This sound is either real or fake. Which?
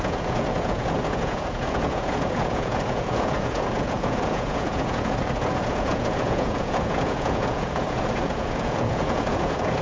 fake